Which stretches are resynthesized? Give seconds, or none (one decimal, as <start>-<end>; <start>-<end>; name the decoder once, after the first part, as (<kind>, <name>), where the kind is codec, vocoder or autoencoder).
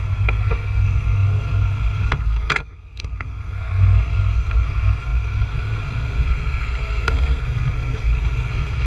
0.0-8.9 (codec, SNAC)